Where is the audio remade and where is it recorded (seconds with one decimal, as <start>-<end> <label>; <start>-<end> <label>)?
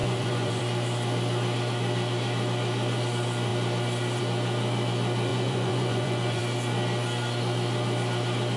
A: 0.0-0.6 remade; 0.6-5.3 recorded; 5.3-6.4 remade; 6.4-8.6 recorded